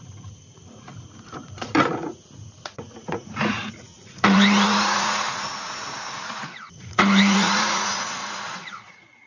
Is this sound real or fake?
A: fake